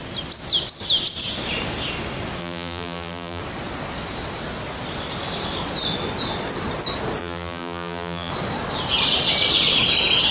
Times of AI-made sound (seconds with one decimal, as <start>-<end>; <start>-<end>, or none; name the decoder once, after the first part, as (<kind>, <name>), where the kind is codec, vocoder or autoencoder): 2.4-3.4 (vocoder, BigVGAN v2); 7.2-8.3